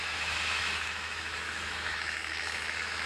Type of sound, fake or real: fake